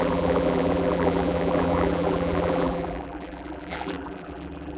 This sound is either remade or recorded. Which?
remade